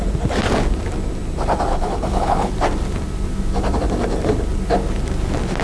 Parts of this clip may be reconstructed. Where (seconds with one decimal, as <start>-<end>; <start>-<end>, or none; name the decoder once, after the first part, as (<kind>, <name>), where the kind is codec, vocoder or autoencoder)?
1.7-2.5 (codec, HILCodec)